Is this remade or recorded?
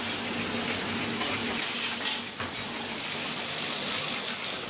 recorded